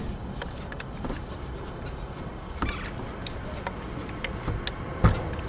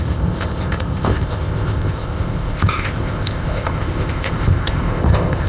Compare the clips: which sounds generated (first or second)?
second